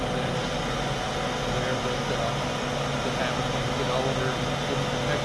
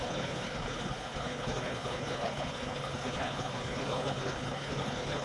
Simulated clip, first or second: second